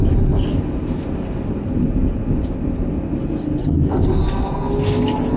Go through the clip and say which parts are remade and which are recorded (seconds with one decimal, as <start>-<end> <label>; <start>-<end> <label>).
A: 0.0-3.6 recorded; 3.6-4.2 remade; 4.2-5.4 recorded